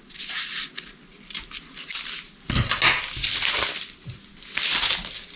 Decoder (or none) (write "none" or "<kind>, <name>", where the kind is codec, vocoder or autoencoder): none